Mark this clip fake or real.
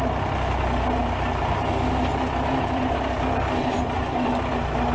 real